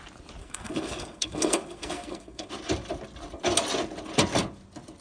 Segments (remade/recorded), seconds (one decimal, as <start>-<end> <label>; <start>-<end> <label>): 0.0-0.4 recorded; 0.4-2.5 remade; 2.5-5.0 recorded